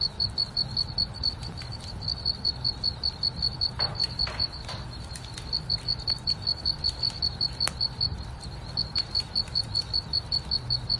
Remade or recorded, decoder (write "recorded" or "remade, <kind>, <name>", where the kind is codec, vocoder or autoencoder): recorded